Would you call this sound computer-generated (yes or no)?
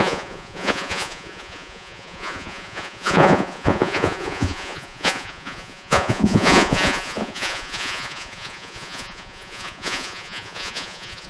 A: yes